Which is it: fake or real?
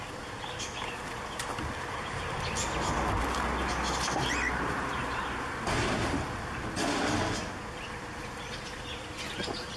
real